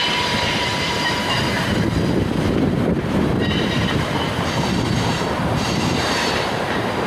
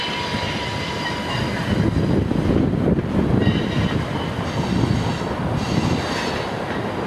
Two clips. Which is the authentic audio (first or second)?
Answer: second